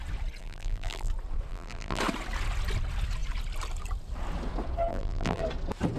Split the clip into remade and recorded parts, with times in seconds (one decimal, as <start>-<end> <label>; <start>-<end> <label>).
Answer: 0.0-0.4 recorded; 0.4-1.1 remade; 1.1-1.5 recorded; 1.5-2.0 remade; 2.0-4.9 recorded; 4.9-5.4 remade; 5.4-6.0 recorded